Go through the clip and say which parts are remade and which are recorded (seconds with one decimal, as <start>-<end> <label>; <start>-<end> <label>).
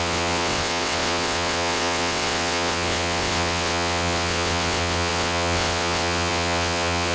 0.0-7.1 remade